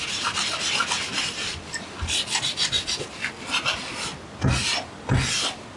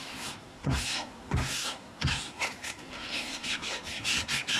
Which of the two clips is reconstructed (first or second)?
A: second